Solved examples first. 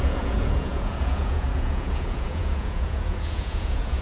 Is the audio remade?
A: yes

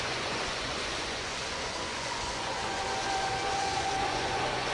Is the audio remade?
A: yes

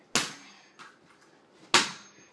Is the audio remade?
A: no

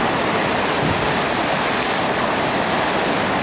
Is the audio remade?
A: no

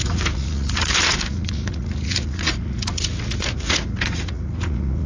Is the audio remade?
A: yes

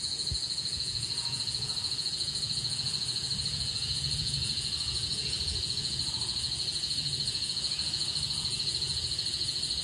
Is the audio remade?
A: yes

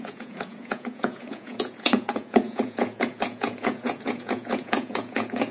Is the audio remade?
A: yes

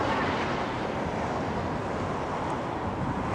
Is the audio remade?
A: no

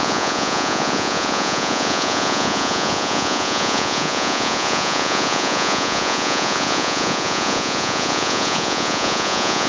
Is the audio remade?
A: yes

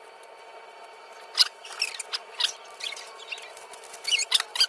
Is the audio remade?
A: no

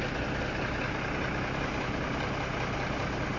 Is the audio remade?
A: no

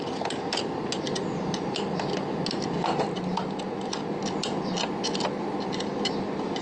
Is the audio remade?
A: no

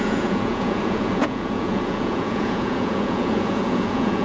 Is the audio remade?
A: yes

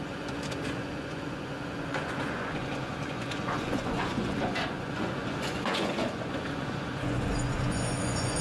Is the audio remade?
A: yes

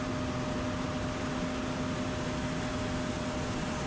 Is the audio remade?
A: no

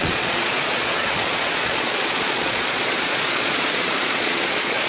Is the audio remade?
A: yes